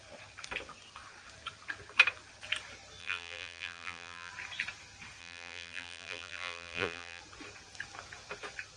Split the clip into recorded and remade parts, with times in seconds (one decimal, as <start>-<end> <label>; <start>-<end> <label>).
0.0-3.0 recorded; 3.0-4.3 remade; 4.3-5.2 recorded; 5.2-7.2 remade; 7.2-8.8 recorded

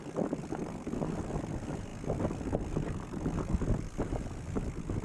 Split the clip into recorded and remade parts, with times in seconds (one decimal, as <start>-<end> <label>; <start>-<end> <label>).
0.0-0.6 remade; 0.6-1.2 recorded; 1.2-1.9 remade; 1.9-2.7 recorded; 2.7-5.0 remade

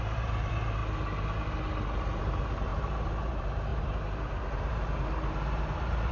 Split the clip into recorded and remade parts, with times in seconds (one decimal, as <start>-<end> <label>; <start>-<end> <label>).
0.0-0.8 remade; 0.8-2.2 recorded; 2.2-6.1 remade

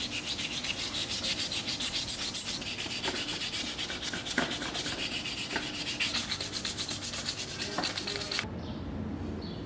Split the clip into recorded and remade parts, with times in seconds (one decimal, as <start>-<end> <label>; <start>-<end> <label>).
0.0-1.0 recorded; 1.0-2.1 remade; 2.1-9.7 recorded